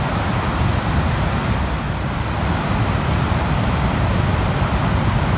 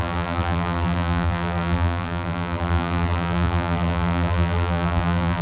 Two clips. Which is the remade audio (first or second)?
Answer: second